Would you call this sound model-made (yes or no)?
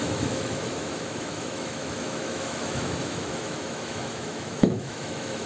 yes